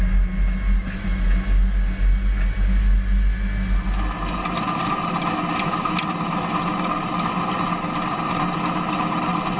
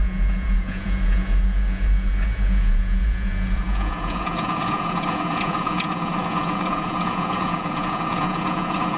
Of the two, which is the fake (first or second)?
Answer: second